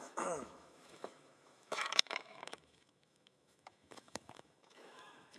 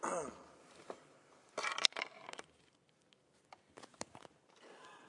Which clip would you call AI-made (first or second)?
first